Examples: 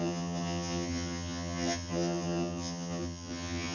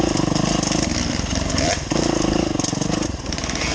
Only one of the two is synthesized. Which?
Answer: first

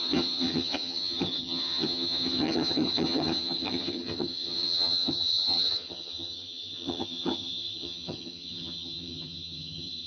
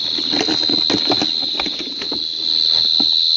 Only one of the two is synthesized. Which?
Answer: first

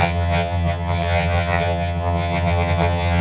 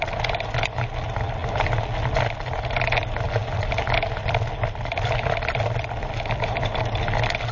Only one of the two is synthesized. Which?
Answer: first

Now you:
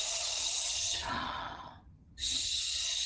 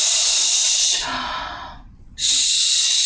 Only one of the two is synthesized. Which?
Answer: first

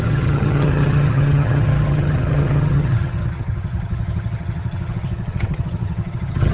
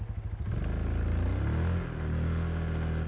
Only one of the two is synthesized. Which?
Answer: first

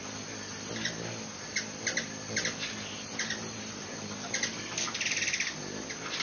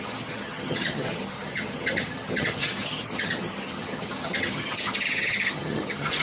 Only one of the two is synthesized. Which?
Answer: second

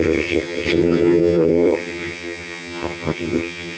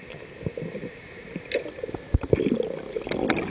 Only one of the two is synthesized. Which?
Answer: first